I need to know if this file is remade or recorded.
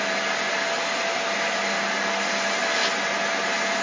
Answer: recorded